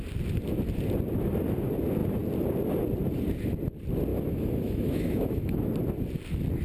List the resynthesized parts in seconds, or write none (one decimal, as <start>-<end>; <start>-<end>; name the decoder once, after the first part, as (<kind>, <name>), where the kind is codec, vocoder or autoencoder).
4.1-5.7 (autoencoder, DAC-VAE)